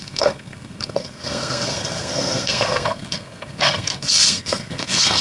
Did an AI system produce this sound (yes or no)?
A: yes